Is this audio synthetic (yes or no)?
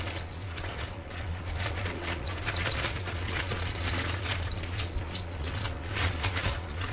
yes